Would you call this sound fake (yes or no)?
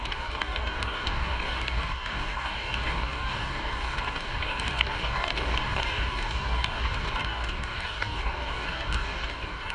yes